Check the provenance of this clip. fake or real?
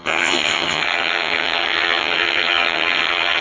fake